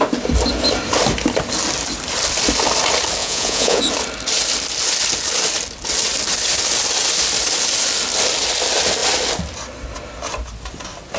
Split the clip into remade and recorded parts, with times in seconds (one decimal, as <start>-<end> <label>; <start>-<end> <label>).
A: 0.0-3.2 recorded; 3.2-3.8 remade; 3.8-11.2 recorded